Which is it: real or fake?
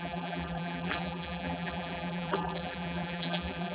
fake